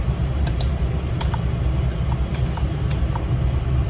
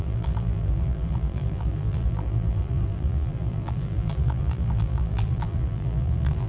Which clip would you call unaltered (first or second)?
first